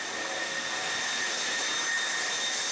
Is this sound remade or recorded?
recorded